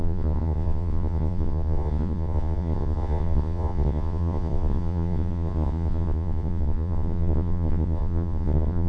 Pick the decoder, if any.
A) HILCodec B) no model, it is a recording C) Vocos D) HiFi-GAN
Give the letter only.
C